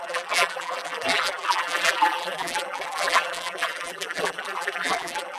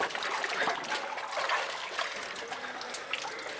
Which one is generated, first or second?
first